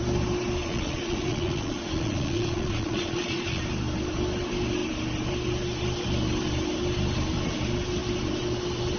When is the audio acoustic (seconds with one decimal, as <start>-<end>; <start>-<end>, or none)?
0.0-0.6; 3.6-9.0